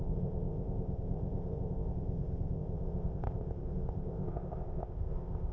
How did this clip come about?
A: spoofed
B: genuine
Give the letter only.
A